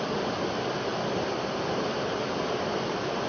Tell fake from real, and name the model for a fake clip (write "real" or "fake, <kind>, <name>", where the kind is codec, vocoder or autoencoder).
real